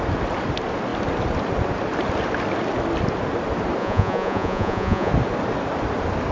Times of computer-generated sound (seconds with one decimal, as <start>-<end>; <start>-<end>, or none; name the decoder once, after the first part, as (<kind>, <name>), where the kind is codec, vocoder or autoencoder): 3.8-5.1 (vocoder, Vocos)